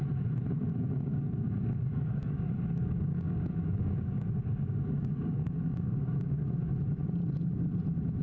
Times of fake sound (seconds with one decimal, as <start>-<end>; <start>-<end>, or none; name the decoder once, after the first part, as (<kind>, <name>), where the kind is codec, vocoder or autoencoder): 1.0-6.7 (codec, DAC)